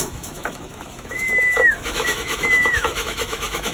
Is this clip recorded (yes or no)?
no